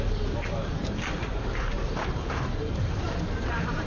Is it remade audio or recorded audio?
remade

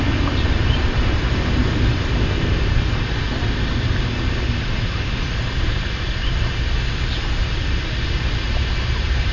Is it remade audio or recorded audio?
recorded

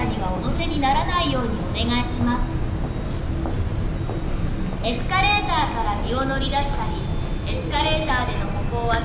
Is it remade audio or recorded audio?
recorded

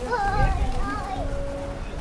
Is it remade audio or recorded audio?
recorded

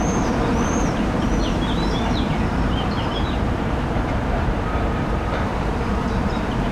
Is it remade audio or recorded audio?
remade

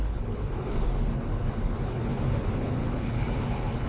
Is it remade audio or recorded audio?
remade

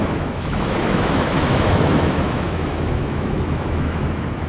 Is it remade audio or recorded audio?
remade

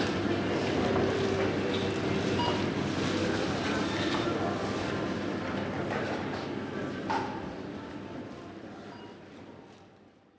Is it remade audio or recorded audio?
recorded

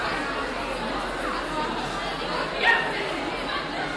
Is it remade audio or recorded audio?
recorded